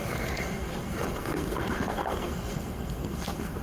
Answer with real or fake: fake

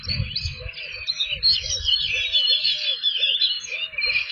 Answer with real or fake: real